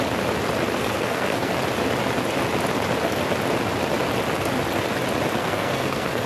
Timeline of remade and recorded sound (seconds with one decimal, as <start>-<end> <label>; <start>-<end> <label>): 0.0-0.8 recorded; 0.8-1.5 remade; 1.5-5.4 recorded; 5.4-6.3 remade